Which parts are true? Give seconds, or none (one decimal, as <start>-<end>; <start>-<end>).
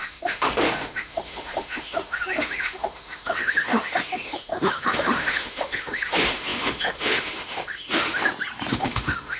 8.2-8.7